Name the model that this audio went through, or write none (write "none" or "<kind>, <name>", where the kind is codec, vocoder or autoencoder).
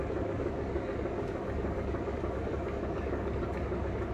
codec, DAC